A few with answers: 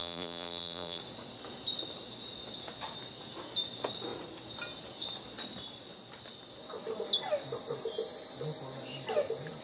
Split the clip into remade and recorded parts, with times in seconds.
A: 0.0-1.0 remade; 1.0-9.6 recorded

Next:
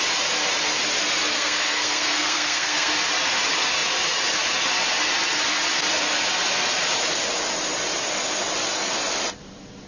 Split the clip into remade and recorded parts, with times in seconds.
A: 0.0-1.3 recorded; 1.3-2.9 remade; 2.9-9.9 recorded